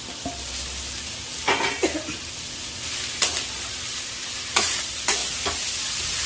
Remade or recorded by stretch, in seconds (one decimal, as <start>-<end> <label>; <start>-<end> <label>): 0.0-6.3 recorded